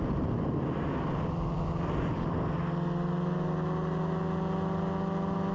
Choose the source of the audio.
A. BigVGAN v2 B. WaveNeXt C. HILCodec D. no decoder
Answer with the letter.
D